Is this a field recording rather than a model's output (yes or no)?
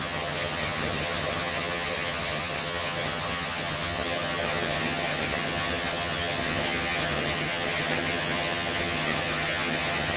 no